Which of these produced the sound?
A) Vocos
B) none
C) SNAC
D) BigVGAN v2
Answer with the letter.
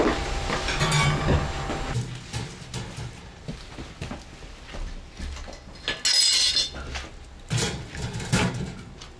B